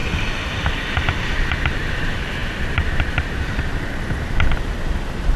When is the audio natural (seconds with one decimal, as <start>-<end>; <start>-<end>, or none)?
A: none